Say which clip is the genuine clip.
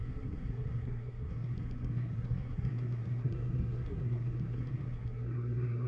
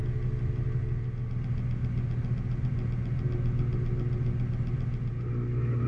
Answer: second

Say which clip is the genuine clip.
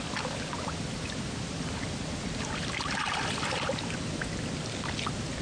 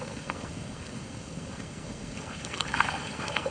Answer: first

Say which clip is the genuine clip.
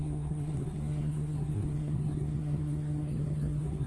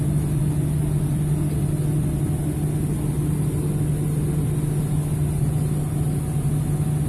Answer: second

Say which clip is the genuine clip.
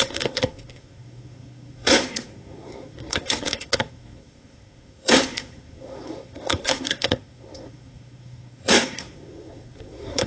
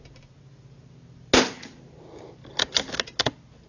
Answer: second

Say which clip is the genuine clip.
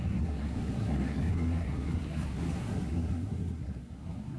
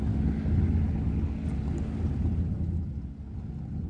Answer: second